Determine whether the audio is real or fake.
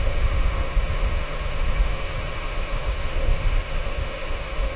fake